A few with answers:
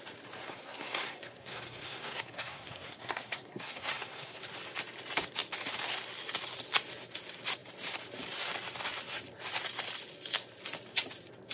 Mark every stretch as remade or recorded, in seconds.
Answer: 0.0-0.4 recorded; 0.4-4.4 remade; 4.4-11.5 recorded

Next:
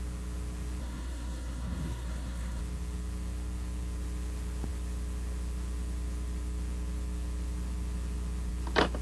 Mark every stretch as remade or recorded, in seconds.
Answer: 0.0-0.8 recorded; 0.8-2.6 remade; 2.6-9.0 recorded

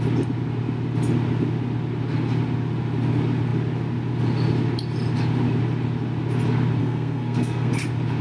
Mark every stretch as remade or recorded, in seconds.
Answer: 0.0-6.8 recorded; 6.8-7.7 remade; 7.7-8.2 recorded

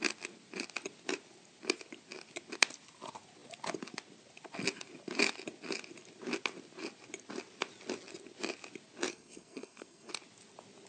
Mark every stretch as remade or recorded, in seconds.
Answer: 0.0-9.1 recorded; 9.1-10.1 remade; 10.1-10.9 recorded